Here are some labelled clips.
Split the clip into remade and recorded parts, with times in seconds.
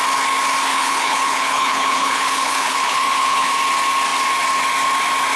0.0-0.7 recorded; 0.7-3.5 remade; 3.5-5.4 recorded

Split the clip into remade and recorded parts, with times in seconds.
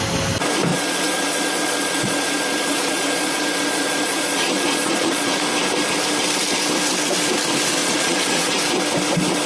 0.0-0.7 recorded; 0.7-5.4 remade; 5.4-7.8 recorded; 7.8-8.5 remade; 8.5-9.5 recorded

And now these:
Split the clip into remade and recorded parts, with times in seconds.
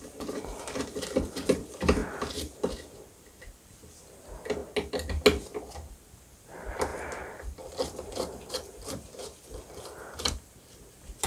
0.0-4.6 remade; 4.6-5.9 recorded; 5.9-6.9 remade; 6.9-7.6 recorded; 7.6-11.3 remade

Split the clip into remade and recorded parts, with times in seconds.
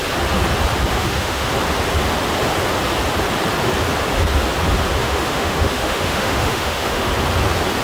0.0-0.9 recorded; 0.9-1.5 remade; 1.5-5.0 recorded; 5.0-7.1 remade; 7.1-7.8 recorded